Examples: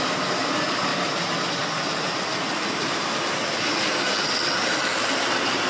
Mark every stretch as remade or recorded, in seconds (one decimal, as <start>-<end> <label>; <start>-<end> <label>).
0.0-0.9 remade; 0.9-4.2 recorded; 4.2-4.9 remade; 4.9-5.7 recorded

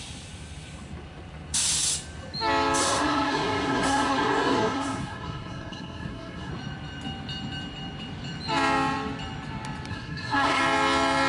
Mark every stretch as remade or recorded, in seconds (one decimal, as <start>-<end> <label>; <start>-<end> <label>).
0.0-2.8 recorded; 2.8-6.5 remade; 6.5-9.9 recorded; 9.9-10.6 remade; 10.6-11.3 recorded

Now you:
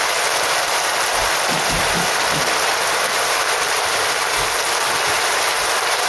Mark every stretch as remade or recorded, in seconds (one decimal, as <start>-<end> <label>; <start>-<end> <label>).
0.0-1.2 recorded; 1.2-4.1 remade; 4.1-6.1 recorded

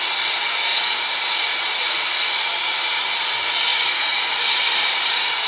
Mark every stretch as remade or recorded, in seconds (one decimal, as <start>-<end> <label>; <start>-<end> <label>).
0.0-3.7 recorded; 3.7-4.6 remade; 4.6-5.5 recorded